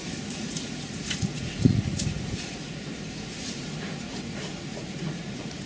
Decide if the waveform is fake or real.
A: fake